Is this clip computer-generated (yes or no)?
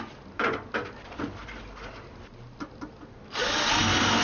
no